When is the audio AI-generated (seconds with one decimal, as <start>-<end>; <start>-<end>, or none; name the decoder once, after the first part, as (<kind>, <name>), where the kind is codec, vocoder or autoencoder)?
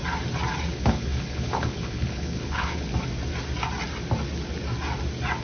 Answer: 0.7-2.9 (codec, HILCodec)